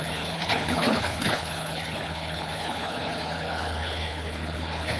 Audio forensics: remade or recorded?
remade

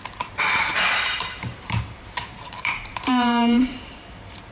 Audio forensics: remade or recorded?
remade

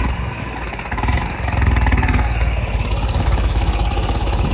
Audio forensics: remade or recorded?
remade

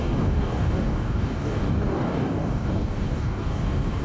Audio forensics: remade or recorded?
remade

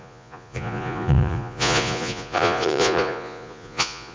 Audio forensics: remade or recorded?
remade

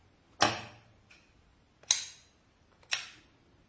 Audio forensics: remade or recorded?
recorded